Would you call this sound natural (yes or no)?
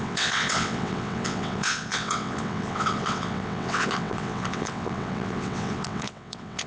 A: no